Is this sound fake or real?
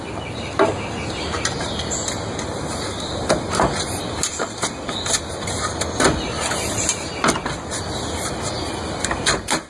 real